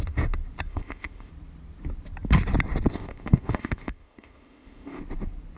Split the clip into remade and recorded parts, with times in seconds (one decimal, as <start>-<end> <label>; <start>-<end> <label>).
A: 0.0-0.7 recorded; 0.7-1.3 remade; 1.3-2.9 recorded; 2.9-5.0 remade; 5.0-5.6 recorded